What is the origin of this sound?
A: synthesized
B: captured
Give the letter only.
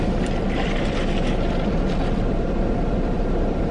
A